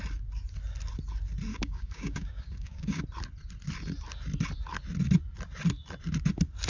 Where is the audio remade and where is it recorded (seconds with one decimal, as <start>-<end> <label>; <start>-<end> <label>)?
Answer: 0.0-1.5 recorded; 1.5-3.0 remade; 3.0-6.7 recorded